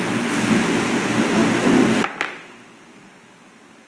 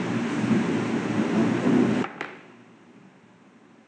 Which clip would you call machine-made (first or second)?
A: second